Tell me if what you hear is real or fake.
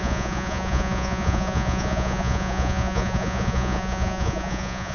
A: fake